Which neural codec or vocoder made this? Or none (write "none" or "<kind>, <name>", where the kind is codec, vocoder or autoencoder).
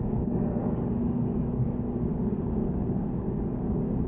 codec, DAC